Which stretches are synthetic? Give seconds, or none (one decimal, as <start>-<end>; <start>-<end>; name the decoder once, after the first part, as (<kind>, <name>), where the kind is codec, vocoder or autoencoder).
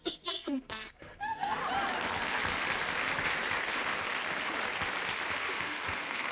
0.0-1.6 (codec, SNAC); 5.4-6.3